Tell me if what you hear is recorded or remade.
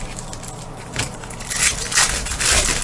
remade